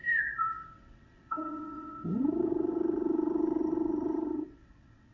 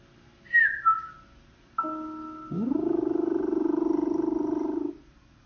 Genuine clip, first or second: second